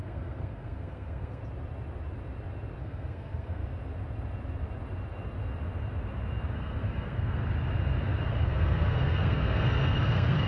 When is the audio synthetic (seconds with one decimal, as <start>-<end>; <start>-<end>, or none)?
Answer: 0.0-1.4; 2.8-3.6; 6.5-7.4; 8.3-10.5